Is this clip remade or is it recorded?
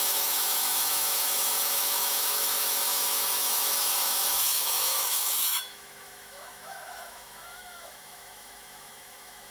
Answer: remade